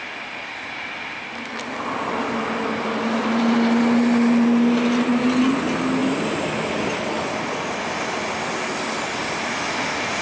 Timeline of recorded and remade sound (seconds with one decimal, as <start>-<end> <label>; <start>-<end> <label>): 0.0-10.2 recorded